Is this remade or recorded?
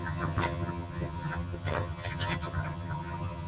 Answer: remade